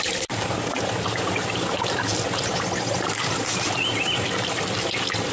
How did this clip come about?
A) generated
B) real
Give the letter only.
B